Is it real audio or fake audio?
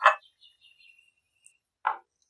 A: real